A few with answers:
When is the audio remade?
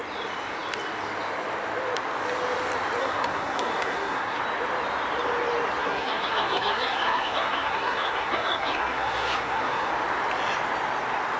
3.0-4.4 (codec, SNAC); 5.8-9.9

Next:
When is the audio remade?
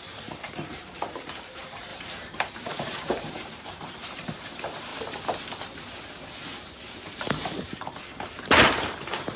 0.0-4.9 (vocoder, BigVGAN v2); 8.4-9.4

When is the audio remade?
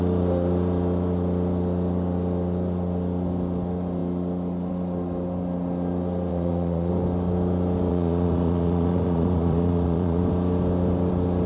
6.3-6.9 (vocoder, Vocos); 7.9-10.2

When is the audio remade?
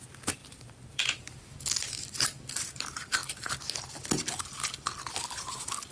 0.0-3.2 (vocoder, BigVGAN v2)